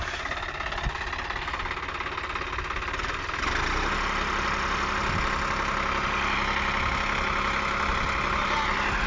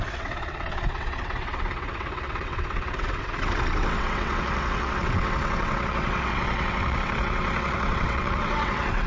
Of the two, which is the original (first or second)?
first